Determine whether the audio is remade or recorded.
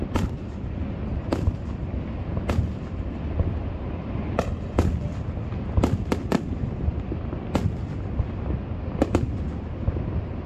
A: recorded